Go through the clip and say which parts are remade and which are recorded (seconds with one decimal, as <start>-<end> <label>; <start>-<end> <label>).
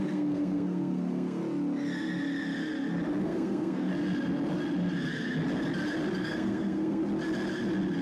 0.0-1.4 remade; 1.4-3.2 recorded; 3.2-3.9 remade; 3.9-6.2 recorded; 6.2-7.0 remade; 7.0-8.0 recorded